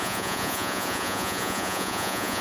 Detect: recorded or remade remade